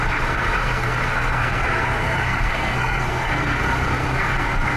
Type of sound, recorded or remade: remade